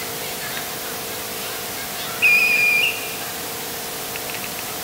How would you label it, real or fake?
real